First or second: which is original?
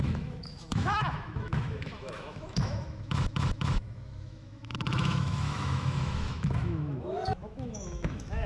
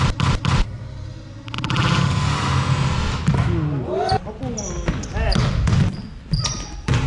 second